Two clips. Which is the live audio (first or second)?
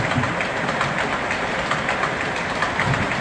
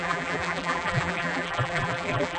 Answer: first